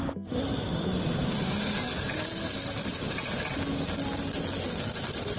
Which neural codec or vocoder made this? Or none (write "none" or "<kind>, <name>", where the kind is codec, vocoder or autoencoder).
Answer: none